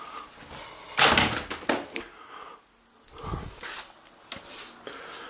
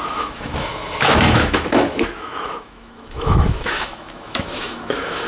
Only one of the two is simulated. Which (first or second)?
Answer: second